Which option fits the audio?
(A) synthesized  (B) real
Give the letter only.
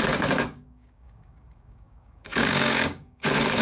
A